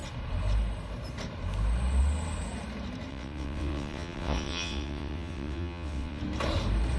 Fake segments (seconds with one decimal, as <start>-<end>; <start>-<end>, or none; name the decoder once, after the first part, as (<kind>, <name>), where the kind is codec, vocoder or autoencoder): 3.1-6.2 (vocoder, WaveNeXt)